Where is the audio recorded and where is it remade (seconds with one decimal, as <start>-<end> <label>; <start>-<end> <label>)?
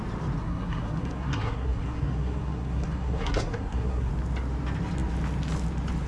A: 0.0-0.4 recorded; 0.4-4.1 remade; 4.1-6.1 recorded